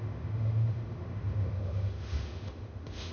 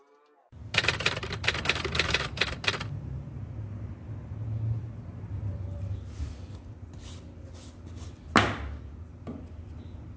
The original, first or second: second